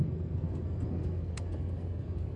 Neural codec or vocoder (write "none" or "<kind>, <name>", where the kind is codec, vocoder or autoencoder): codec, SNAC